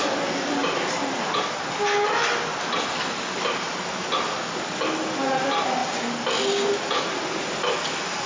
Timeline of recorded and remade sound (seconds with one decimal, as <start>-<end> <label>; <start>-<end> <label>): 0.0-8.3 recorded